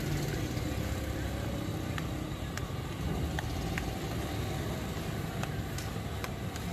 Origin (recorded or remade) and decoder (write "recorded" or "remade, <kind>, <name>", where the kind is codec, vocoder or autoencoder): recorded